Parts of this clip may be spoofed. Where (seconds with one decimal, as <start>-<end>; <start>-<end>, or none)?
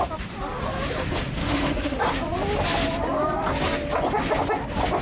1.4-2.0